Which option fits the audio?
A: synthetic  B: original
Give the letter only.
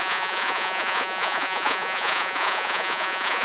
A